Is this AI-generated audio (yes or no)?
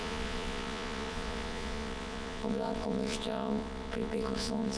yes